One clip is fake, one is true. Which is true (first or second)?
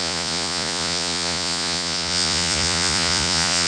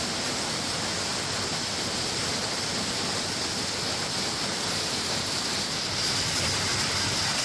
second